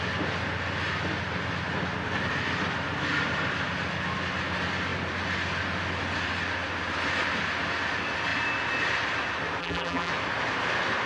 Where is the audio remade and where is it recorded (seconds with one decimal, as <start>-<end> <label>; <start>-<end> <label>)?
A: 0.0-9.6 recorded; 9.6-10.1 remade; 10.1-11.1 recorded